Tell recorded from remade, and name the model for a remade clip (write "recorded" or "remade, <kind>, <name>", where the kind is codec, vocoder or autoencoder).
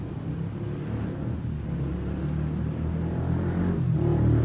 recorded